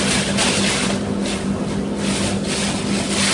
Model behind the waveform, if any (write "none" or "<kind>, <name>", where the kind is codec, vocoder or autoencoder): none